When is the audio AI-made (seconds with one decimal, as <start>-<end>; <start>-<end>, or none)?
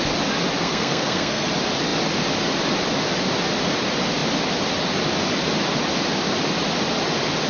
0.6-1.5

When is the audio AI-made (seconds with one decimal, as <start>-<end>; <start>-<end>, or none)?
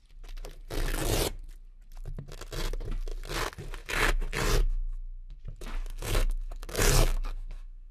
4.6-5.4; 5.9-7.9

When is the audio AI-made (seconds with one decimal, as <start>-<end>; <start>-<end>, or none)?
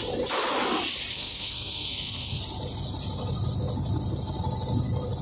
1.1-2.4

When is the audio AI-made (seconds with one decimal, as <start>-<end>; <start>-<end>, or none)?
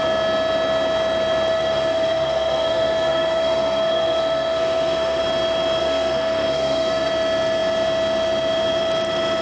1.5-5.2; 5.8-7.1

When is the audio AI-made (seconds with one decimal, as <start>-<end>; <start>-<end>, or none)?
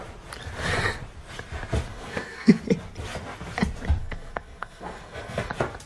1.9-2.6; 4.0-5.5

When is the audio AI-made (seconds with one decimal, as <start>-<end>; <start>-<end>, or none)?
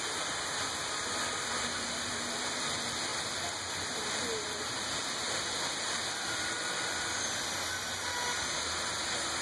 none